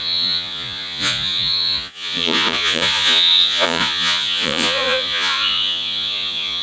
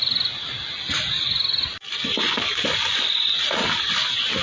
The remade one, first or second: first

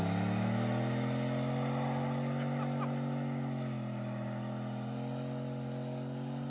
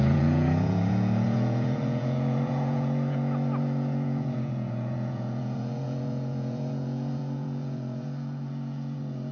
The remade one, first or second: second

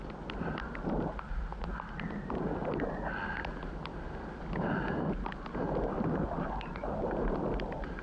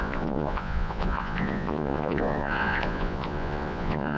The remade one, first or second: second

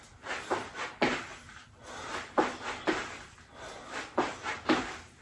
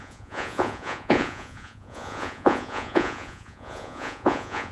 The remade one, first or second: second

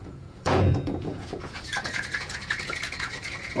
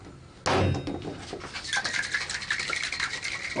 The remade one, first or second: first